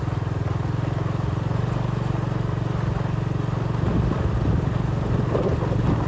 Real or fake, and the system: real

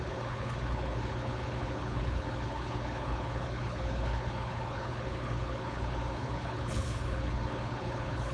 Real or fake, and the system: fake, codec, HILCodec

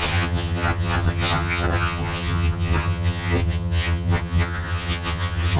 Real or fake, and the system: fake, vocoder, HiFi-GAN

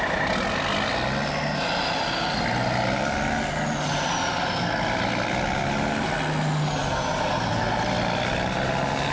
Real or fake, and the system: real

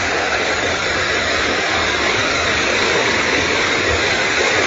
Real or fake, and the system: fake, codec, DAC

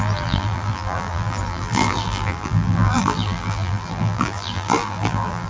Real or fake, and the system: fake, vocoder, BigVGAN v2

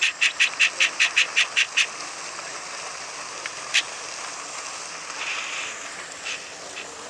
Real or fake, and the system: real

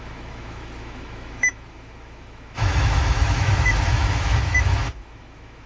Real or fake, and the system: fake, autoencoder, DAC-VAE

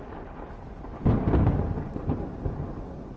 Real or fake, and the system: real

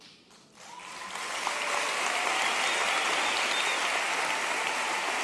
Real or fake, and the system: real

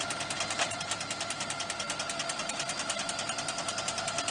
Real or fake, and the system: real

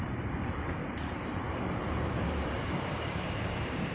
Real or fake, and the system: fake, vocoder, BigVGAN v2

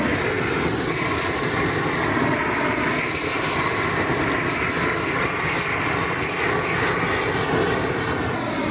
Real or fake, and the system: real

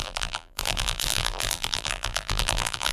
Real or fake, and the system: fake, vocoder, BigVGAN v2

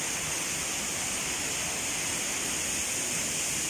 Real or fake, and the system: real